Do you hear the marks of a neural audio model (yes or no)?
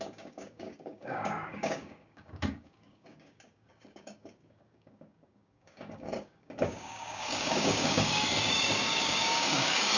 yes